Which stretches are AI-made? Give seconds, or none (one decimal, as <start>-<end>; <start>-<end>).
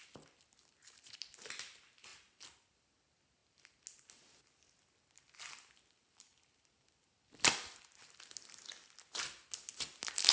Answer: none